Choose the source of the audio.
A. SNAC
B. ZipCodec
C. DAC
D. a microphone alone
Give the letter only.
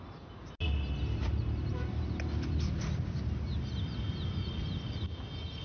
D